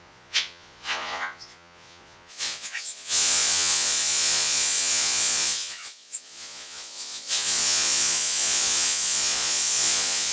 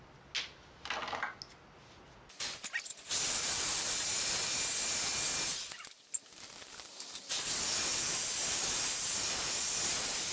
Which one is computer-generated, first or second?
first